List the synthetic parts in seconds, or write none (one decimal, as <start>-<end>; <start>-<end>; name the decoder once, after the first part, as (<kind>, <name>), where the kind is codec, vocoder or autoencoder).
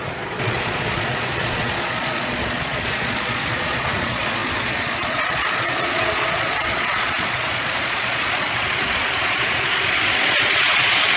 0.0-11.2 (vocoder, Vocos)